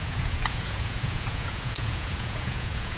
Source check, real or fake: fake